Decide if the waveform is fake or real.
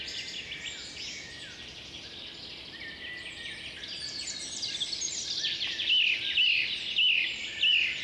real